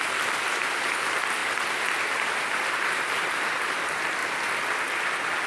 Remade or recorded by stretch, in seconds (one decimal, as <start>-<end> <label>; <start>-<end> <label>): 0.0-5.5 recorded